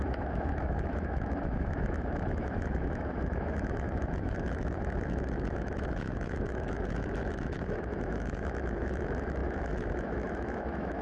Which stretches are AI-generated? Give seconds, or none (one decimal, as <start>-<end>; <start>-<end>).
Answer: 0.0-11.0